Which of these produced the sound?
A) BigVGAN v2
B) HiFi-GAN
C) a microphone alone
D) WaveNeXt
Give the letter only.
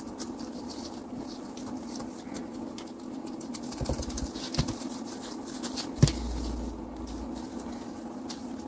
C